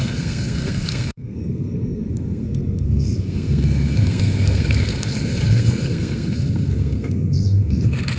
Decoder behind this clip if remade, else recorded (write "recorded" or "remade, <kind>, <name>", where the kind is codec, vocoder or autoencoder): remade, codec, SNAC